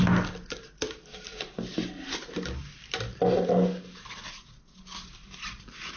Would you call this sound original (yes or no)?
yes